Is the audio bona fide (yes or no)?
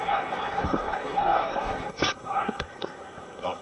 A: no